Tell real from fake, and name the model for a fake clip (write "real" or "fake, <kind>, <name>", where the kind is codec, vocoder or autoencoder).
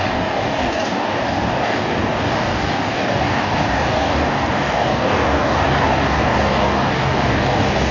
fake, codec, DAC